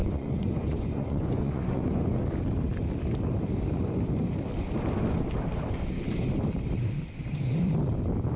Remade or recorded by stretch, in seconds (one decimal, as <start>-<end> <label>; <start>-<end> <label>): 0.0-2.1 remade; 2.1-8.4 recorded